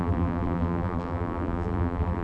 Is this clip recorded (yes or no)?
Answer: no